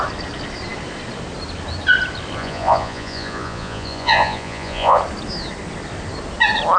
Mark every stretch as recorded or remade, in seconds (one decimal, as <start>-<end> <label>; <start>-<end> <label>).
0.0-2.4 recorded; 2.4-5.0 remade; 5.0-6.8 recorded